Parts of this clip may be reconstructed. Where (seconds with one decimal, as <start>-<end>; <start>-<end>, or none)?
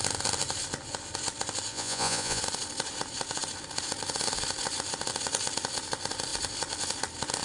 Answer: 1.7-2.4